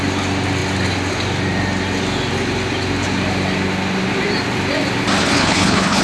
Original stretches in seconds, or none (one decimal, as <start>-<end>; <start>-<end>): 0.0-5.2